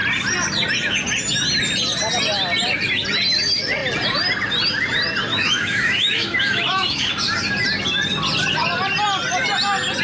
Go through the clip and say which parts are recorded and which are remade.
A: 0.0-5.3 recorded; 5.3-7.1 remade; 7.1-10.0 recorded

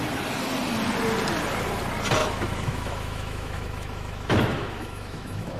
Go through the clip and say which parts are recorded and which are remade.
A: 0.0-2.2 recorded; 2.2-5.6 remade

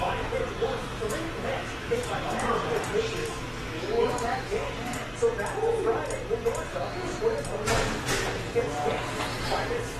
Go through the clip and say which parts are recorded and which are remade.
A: 0.0-0.8 recorded; 0.8-2.5 remade; 2.5-3.2 recorded; 3.2-4.7 remade; 4.7-6.7 recorded; 6.7-7.2 remade; 7.2-10.0 recorded

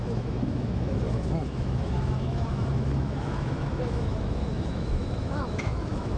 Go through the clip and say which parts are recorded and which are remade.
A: 0.0-6.2 remade

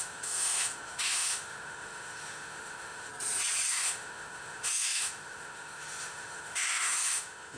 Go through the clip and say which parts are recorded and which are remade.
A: 0.0-3.1 remade; 3.1-3.7 recorded; 3.7-7.6 remade